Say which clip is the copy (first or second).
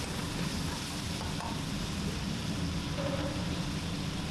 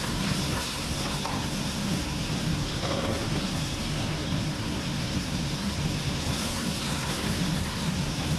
second